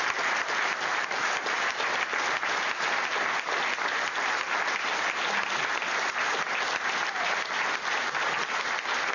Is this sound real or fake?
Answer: real